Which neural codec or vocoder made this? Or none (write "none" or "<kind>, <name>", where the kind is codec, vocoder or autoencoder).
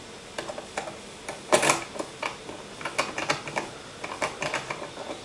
none